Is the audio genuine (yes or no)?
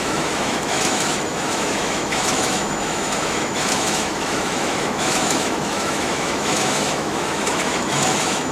no